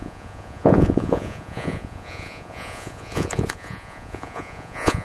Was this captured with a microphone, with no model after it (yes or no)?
no